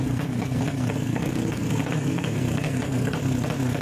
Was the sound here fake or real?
fake